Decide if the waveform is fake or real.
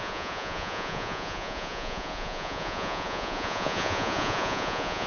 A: fake